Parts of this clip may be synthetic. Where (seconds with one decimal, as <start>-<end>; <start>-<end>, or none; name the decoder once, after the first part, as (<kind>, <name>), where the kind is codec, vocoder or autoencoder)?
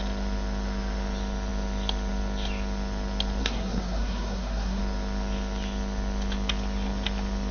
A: 3.4-4.8 (codec, SNAC)